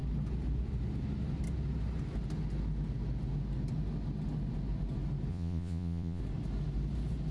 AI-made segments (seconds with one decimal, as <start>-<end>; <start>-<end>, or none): 5.3-6.2